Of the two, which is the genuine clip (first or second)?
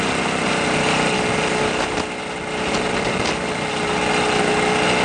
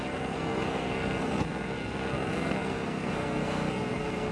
first